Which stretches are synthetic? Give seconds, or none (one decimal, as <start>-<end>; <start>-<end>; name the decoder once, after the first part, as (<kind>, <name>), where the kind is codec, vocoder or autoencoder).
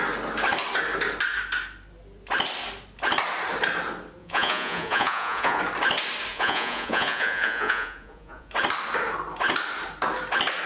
4.2-5.6 (vocoder, Vocos); 6.3-8.5